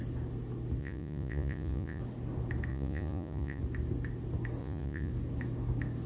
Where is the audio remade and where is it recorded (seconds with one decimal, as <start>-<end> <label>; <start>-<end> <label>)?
0.0-0.8 recorded; 0.8-2.0 remade; 2.0-2.7 recorded; 2.7-3.6 remade; 3.6-4.6 recorded; 4.6-5.1 remade; 5.1-6.1 recorded